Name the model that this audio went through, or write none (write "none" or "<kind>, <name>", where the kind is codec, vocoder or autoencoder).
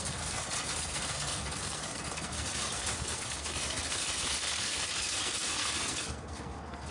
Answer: codec, SNAC